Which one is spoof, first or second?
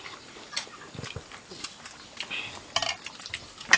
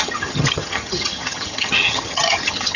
second